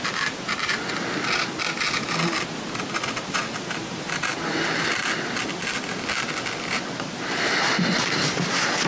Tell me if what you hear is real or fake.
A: real